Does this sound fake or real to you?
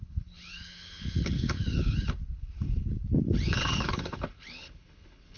fake